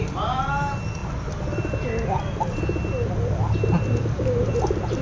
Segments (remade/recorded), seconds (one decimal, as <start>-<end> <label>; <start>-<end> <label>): 0.0-5.0 recorded